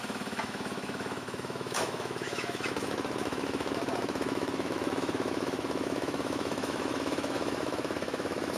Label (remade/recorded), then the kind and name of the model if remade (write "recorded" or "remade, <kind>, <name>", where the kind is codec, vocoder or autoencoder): remade, autoencoder, DAC-VAE